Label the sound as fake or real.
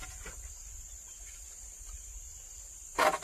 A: real